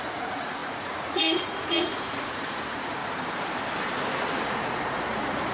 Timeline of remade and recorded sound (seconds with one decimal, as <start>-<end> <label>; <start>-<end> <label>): 0.0-3.0 remade; 3.0-4.4 recorded; 4.4-5.5 remade